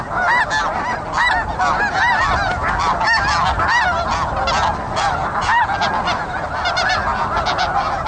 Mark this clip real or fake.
real